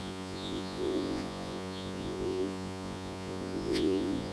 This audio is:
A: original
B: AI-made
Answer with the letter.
B